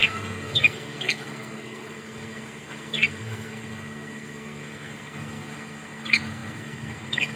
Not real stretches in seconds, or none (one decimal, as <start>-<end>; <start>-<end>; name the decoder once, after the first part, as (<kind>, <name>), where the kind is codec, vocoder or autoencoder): 0.0-7.4 (codec, SNAC)